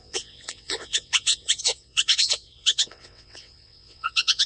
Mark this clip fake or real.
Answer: fake